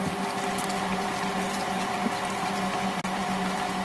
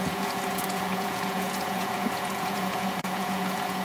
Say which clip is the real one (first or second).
first